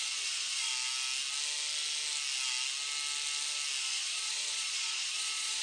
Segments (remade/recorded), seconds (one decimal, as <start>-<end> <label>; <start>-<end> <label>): 0.0-0.7 remade; 0.7-3.8 recorded; 3.8-5.6 remade